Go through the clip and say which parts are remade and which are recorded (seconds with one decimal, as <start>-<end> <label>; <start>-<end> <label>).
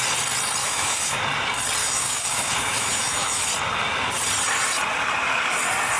0.0-0.6 recorded; 0.6-1.2 remade; 1.2-1.8 recorded; 1.8-3.4 remade; 3.4-6.0 recorded